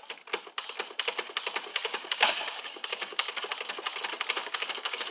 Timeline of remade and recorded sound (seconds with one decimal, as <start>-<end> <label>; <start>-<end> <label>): 0.0-1.7 recorded; 1.7-3.4 remade; 3.4-4.4 recorded; 4.4-5.1 remade